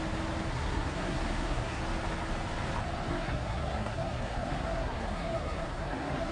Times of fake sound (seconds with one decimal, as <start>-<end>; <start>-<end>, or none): 0.5-1.8; 3.1-6.3